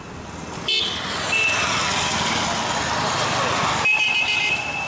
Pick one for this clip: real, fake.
real